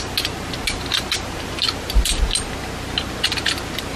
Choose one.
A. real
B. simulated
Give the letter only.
A